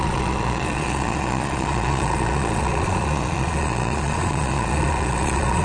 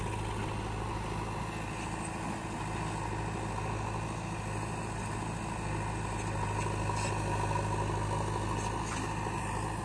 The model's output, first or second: first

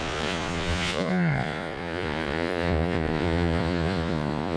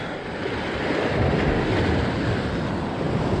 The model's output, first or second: first